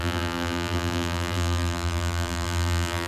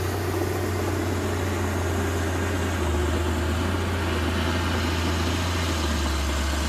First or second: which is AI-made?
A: first